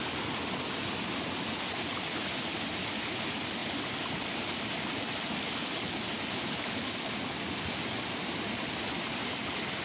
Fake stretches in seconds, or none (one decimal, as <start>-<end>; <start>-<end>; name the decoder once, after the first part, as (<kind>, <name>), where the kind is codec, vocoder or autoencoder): none